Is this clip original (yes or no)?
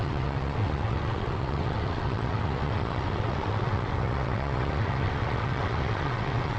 no